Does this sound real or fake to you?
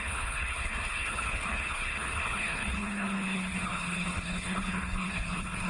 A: fake